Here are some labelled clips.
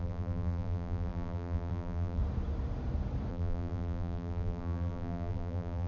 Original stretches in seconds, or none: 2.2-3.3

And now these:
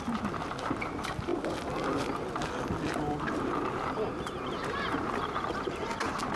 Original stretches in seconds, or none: 0.0-6.4

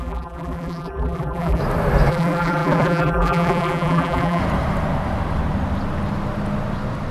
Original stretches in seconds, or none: 1.6-2.1; 4.4-7.1

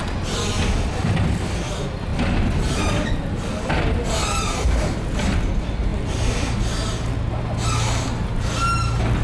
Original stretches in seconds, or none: 0.0-9.2